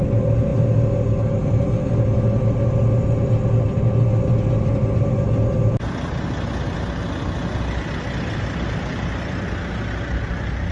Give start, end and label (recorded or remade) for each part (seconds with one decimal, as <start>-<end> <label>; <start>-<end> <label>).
0.0-10.7 recorded